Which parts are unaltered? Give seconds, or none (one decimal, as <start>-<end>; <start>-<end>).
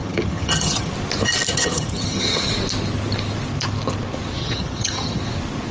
0.9-1.5; 2.5-4.4; 5.2-5.7